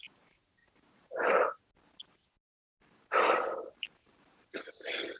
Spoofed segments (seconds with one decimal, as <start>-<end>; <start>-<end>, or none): 4.0-4.6